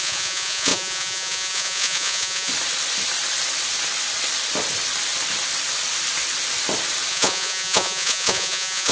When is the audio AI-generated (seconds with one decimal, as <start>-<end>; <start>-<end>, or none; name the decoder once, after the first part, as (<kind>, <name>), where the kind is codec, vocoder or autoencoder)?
0.0-2.5 (vocoder, Vocos); 7.1-8.9